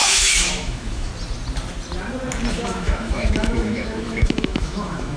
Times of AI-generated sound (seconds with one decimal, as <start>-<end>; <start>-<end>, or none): 0.0-1.1; 2.5-5.2